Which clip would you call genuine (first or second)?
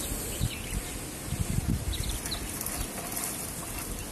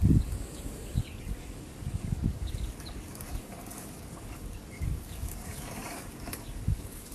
first